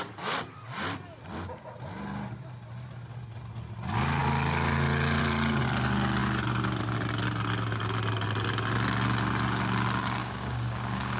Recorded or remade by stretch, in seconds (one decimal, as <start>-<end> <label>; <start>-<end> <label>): 0.0-10.2 recorded; 10.2-11.2 remade